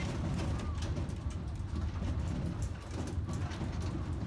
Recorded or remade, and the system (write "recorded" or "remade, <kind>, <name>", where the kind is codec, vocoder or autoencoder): recorded